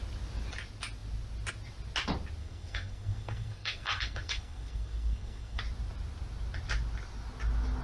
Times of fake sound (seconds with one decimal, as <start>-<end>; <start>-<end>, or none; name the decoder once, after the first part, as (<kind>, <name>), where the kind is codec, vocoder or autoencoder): 2.4-5.6 (codec, SNAC)